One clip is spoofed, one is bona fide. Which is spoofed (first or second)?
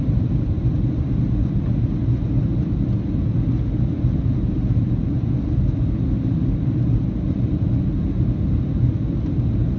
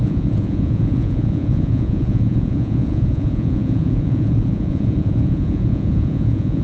second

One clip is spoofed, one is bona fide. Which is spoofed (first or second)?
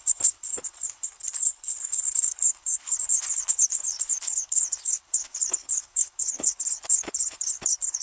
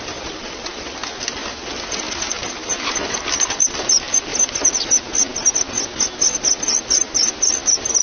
first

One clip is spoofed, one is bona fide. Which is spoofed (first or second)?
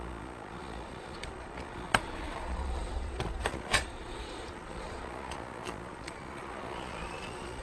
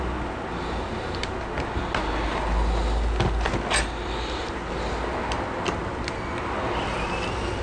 first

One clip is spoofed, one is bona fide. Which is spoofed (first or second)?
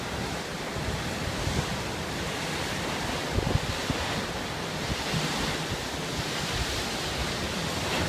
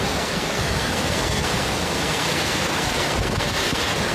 second